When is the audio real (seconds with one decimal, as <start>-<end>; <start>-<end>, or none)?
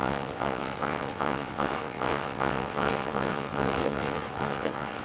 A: none